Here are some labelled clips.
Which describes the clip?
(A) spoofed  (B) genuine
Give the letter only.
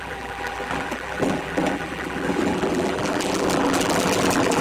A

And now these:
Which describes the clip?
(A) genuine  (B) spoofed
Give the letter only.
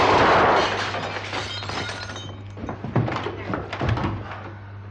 A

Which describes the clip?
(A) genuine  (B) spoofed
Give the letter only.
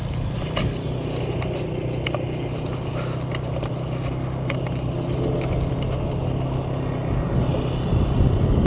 A